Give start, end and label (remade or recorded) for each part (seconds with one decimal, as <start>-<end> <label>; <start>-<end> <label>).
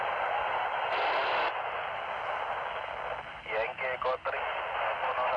0.0-5.4 recorded